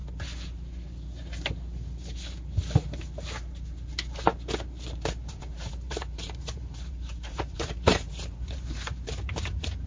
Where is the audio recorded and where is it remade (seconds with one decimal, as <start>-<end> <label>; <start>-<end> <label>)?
0.0-5.0 recorded; 5.0-9.9 remade

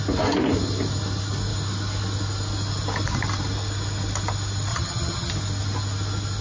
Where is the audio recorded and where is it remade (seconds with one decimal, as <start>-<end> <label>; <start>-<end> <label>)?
0.0-4.7 recorded; 4.7-5.3 remade; 5.3-6.4 recorded

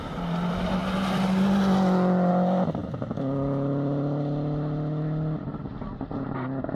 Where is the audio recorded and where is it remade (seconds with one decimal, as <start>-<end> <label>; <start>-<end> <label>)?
0.0-6.7 recorded

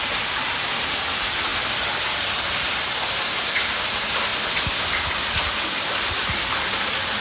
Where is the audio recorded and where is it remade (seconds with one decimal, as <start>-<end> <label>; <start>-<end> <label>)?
0.0-1.5 remade; 1.5-2.6 recorded; 2.6-7.2 remade

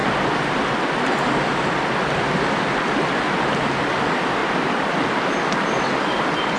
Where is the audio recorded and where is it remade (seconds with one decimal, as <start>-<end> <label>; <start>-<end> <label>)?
0.0-4.0 remade; 4.0-4.4 recorded; 4.4-5.5 remade; 5.5-6.6 recorded

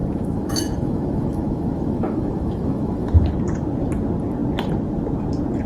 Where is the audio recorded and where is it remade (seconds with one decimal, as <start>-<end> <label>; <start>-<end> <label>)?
0.0-3.3 remade; 3.3-5.7 recorded

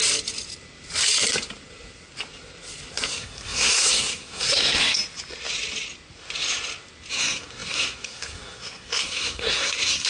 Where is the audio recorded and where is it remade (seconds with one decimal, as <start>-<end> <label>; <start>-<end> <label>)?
0.0-3.1 recorded; 3.1-5.0 remade; 5.0-7.1 recorded; 7.1-10.1 remade

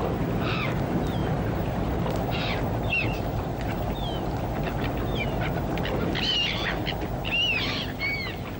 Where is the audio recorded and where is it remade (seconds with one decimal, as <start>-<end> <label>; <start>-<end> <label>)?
0.0-1.2 recorded; 1.2-4.4 remade; 4.4-8.6 recorded